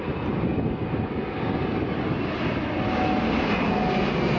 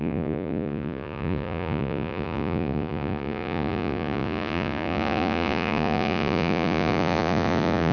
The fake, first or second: second